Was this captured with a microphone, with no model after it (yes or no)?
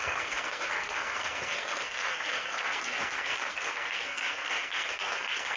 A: no